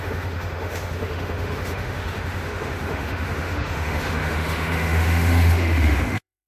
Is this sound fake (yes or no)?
yes